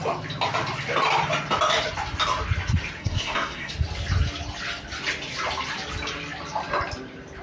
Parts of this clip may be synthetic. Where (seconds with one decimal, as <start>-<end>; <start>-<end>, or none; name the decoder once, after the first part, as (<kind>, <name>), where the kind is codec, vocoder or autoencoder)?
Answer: 3.0-3.7 (codec, SNAC)